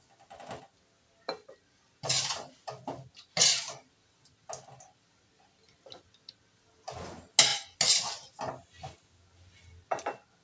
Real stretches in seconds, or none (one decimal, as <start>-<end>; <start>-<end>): 0.0-10.4